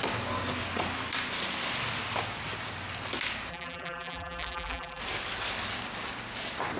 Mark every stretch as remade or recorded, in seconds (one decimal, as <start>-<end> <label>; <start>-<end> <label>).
0.0-3.5 recorded; 3.5-5.0 remade; 5.0-6.8 recorded